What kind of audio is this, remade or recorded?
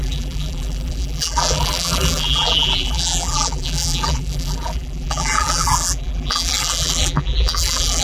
remade